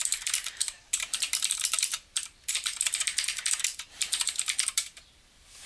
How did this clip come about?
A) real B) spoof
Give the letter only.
B